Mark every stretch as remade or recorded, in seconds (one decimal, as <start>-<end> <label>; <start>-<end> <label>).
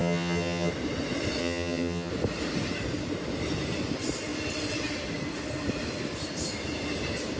0.0-0.7 remade; 0.7-1.4 recorded; 1.4-2.1 remade; 2.1-7.4 recorded